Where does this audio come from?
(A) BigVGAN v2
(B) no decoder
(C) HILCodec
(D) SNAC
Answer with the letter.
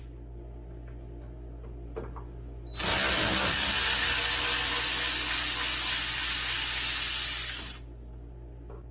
B